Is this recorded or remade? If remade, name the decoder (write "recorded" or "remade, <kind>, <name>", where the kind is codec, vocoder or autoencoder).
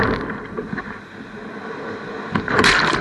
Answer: recorded